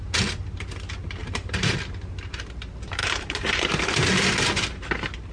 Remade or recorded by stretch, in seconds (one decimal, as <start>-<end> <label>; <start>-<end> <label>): 0.0-1.2 recorded; 1.2-1.8 remade; 1.8-3.0 recorded; 3.0-4.2 remade; 4.2-5.3 recorded